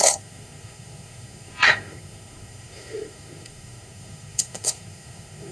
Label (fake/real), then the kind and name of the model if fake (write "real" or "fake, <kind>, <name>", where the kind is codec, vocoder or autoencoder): fake, codec, SNAC